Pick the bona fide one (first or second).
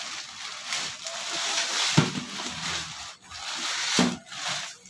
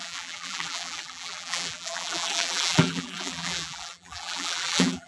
first